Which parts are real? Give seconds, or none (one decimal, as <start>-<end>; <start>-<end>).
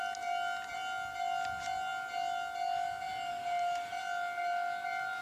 0.0-5.2